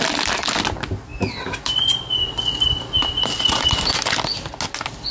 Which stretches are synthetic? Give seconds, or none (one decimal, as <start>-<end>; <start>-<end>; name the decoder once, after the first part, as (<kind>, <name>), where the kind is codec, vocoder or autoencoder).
none